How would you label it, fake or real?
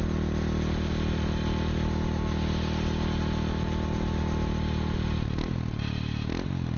real